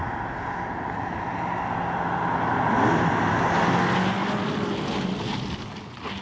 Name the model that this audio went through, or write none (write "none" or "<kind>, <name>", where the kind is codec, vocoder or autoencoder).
none